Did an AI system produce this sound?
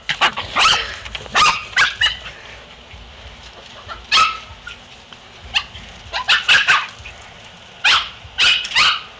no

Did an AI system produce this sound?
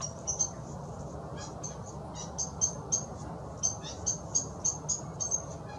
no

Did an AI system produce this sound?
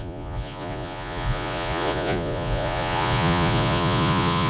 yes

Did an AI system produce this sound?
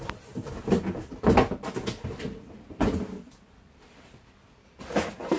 no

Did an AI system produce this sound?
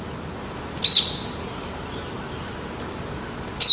no